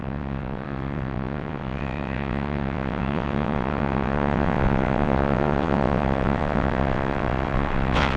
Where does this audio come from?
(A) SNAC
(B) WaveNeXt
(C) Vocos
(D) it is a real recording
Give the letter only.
B